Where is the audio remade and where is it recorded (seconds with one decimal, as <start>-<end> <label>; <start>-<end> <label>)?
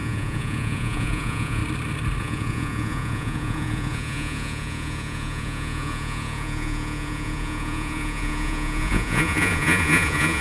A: 0.0-1.6 remade; 1.6-2.2 recorded; 2.2-10.4 remade